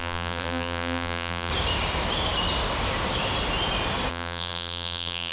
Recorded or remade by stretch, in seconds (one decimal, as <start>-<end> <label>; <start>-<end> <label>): 0.0-1.5 remade; 1.5-4.1 recorded; 4.1-5.3 remade